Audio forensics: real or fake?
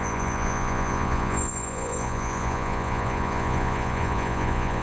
fake